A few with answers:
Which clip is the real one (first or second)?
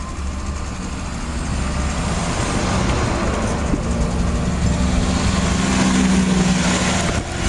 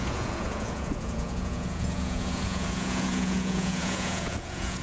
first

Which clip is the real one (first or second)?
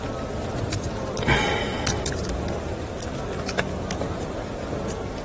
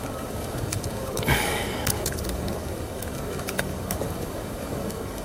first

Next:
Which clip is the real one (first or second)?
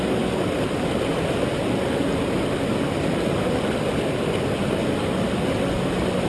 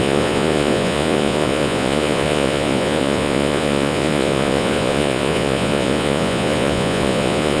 first